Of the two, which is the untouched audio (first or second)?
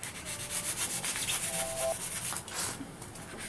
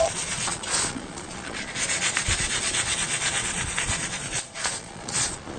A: first